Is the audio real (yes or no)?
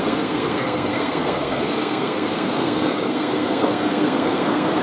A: no